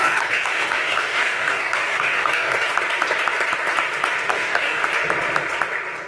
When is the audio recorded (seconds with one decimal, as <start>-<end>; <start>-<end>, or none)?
2.7-4.3; 4.8-6.1